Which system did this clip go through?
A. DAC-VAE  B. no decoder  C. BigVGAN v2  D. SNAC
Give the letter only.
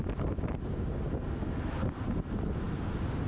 B